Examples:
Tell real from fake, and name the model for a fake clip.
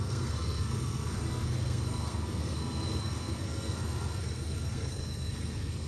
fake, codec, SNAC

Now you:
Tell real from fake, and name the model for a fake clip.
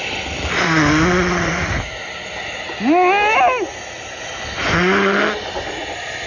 real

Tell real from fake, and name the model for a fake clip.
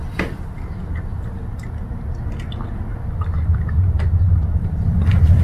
real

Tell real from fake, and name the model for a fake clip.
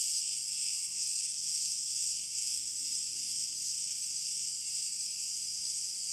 fake, codec, SNAC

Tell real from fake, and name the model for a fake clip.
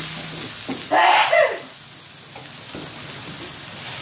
real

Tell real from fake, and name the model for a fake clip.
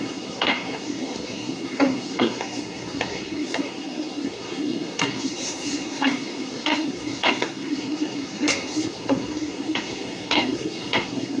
fake, codec, SNAC